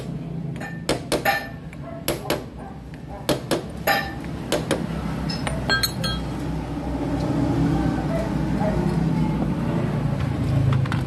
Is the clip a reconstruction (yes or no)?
no